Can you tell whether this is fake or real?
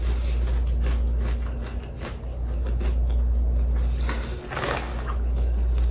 real